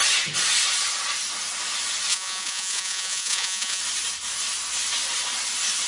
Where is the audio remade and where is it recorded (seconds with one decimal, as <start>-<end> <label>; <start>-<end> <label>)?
0.0-2.1 recorded; 2.1-3.8 remade; 3.8-5.9 recorded